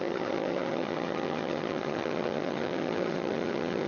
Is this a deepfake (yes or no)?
yes